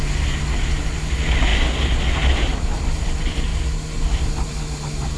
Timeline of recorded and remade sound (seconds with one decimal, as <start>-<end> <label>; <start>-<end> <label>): 0.0-5.2 recorded